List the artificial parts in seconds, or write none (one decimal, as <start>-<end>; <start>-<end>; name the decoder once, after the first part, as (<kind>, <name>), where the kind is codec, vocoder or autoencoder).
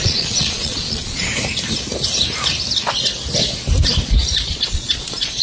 0.0-1.3 (vocoder, Vocos); 4.5-5.4